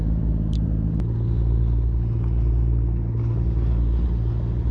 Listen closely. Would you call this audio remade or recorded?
recorded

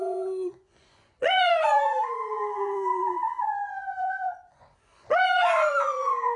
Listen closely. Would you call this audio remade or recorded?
remade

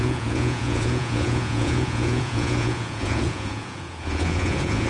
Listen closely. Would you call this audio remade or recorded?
remade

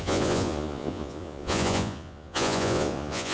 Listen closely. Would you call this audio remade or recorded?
remade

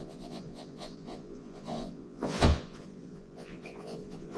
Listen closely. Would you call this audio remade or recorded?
remade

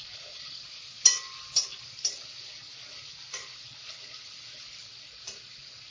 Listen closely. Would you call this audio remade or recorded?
recorded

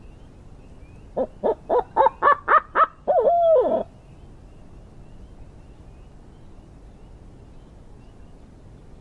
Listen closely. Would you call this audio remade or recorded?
recorded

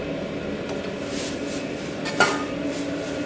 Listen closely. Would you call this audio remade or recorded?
recorded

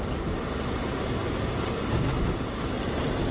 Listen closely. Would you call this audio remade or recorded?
recorded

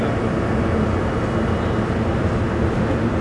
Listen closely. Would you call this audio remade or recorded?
recorded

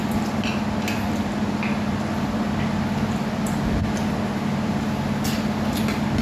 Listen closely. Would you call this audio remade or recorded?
recorded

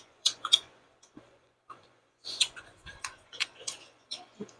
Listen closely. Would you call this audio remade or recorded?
remade